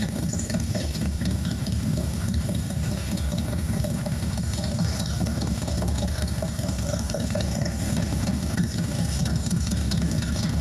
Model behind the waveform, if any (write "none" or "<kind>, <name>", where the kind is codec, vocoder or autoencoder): codec, DAC